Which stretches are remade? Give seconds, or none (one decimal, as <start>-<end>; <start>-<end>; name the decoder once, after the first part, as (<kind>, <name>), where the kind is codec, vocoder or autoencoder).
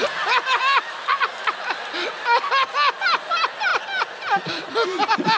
none